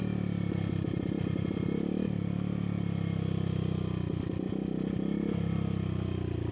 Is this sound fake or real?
real